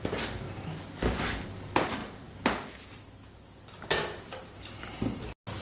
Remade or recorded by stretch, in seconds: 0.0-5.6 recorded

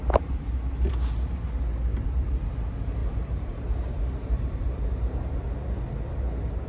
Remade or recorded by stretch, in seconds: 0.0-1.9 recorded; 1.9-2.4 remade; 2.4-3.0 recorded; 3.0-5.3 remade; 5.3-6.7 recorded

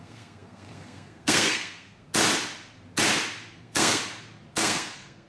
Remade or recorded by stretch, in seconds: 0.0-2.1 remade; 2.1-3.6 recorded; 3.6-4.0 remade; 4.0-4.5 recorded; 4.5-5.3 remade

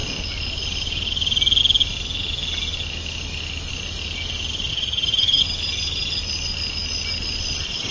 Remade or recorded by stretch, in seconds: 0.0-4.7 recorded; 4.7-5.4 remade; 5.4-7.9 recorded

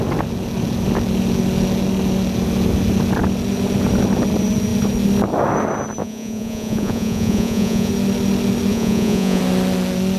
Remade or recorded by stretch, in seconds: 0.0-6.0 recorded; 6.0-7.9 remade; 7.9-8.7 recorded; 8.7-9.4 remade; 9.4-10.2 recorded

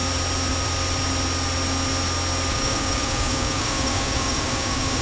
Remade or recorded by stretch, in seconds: 0.0-2.5 recorded; 2.5-5.0 remade

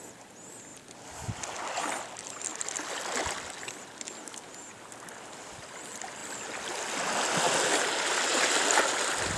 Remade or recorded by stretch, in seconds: 0.0-9.4 recorded